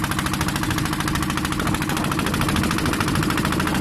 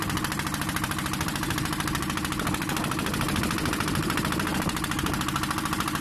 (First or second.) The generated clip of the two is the second